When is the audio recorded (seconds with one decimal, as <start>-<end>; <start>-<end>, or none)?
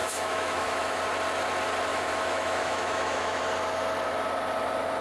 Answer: 1.0-1.9; 3.4-5.0